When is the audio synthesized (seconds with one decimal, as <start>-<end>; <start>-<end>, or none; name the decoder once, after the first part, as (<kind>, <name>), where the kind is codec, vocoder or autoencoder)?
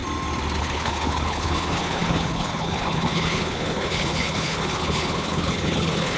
0.6-6.2 (codec, HILCodec)